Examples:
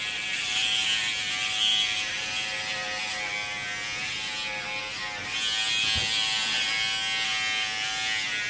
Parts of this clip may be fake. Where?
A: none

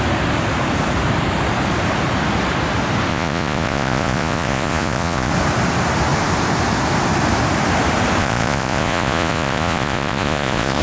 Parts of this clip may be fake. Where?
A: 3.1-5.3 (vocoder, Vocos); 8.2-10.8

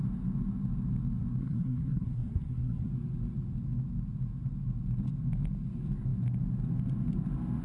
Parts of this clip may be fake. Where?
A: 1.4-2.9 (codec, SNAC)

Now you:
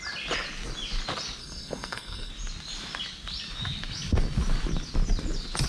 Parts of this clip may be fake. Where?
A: 1.4-2.3 (codec, SNAC)

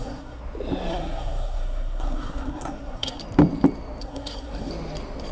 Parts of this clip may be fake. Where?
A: 0.0-0.4 (codec, SNAC); 0.9-3.2; 4.0-4.7

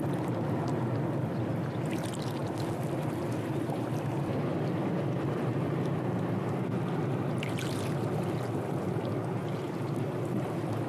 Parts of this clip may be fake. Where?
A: none

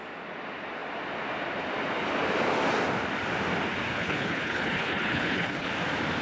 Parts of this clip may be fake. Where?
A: 3.9-5.7 (codec, HILCodec)

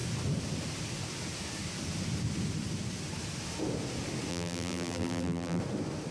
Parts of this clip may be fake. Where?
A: 4.3-5.6 (vocoder, BigVGAN v2)